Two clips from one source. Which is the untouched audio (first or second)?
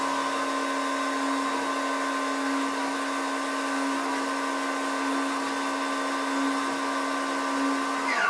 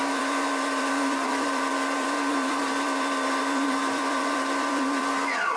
first